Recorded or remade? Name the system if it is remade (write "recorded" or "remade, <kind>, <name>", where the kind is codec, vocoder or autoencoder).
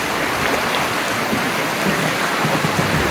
recorded